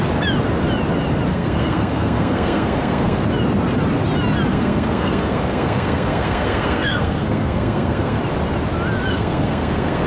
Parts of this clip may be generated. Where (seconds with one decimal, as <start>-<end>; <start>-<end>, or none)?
1.3-3.2; 4.5-8.2; 9.1-10.1